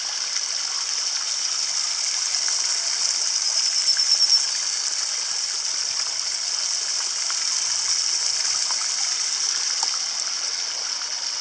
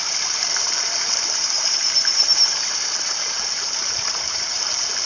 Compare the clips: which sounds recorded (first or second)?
first